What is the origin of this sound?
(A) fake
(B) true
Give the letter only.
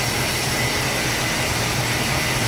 B